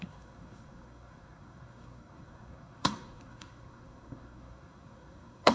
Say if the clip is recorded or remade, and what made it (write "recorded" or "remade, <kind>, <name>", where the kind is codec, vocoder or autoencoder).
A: remade, codec, SNAC